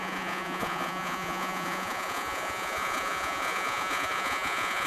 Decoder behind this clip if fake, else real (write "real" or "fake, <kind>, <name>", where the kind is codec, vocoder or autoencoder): fake, vocoder, Vocos